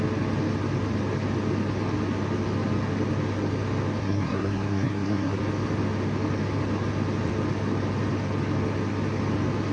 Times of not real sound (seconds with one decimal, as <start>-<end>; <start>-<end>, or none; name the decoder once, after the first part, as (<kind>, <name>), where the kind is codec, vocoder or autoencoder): 4.0-5.4 (codec, SNAC)